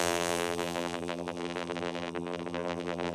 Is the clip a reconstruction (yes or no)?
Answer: yes